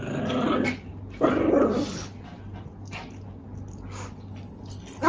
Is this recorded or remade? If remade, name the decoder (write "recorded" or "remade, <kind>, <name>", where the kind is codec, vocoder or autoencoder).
recorded